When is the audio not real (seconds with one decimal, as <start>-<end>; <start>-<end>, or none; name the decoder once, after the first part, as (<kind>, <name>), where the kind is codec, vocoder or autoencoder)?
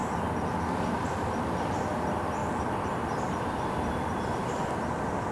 none